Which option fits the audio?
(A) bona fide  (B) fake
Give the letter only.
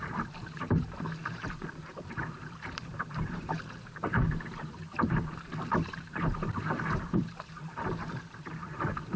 B